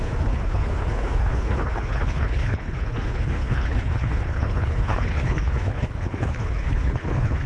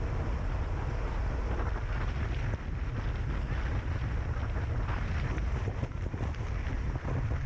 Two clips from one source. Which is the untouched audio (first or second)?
second